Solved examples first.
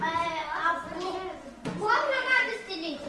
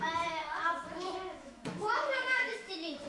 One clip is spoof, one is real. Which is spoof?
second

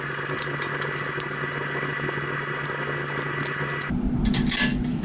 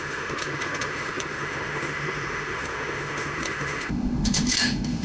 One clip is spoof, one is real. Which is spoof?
second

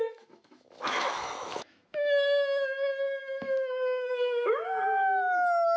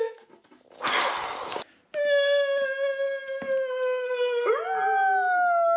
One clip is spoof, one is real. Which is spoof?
first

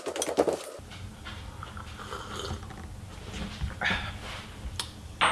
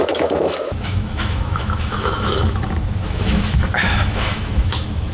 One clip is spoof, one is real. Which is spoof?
second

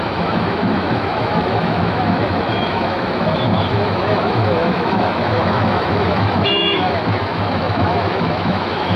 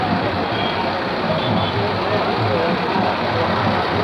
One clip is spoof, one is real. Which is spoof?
first